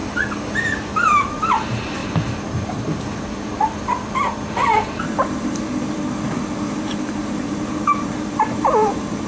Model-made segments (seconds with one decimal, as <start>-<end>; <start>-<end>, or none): 0.5-9.3